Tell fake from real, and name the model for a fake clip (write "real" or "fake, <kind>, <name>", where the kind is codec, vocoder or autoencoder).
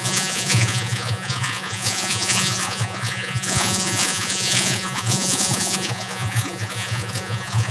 fake, vocoder, Vocos